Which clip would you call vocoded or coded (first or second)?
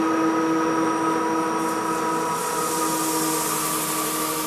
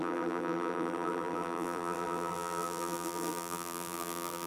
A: second